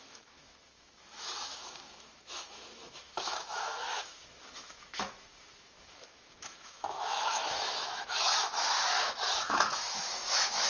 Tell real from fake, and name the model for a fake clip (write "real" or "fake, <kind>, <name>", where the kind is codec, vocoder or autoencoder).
fake, autoencoder, DAC-VAE